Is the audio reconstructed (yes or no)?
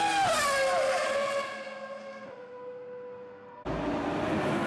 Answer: no